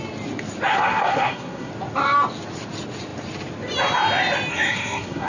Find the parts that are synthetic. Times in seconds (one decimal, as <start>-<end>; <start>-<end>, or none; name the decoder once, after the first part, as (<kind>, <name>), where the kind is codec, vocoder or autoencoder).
0.7-1.7 (codec, SNAC); 4.5-5.3